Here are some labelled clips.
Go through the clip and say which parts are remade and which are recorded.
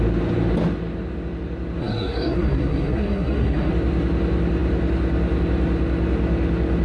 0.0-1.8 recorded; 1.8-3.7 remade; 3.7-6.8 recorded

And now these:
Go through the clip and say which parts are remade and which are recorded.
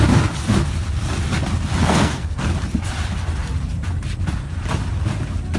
0.0-1.8 recorded; 1.8-2.5 remade; 2.5-5.6 recorded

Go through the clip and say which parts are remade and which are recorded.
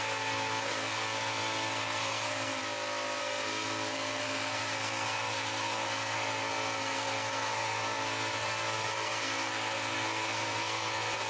0.0-2.6 remade; 2.6-3.2 recorded; 3.2-11.3 remade